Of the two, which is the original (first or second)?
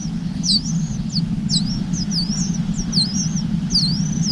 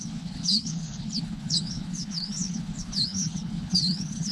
first